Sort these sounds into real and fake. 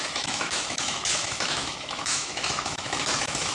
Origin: fake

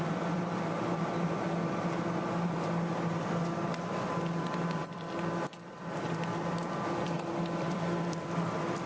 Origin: fake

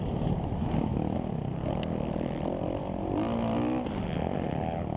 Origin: real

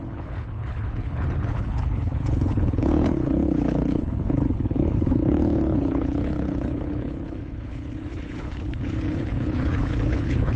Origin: fake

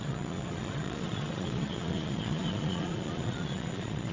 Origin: fake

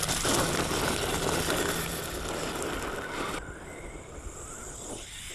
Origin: real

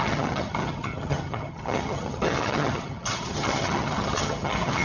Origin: fake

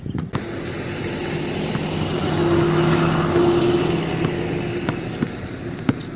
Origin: real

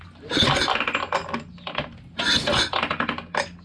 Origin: real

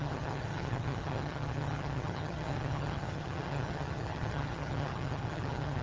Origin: fake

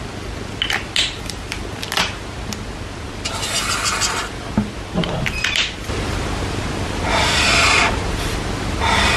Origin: real